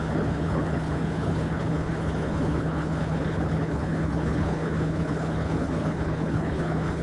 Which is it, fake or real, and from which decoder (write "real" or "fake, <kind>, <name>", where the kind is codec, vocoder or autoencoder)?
fake, codec, HILCodec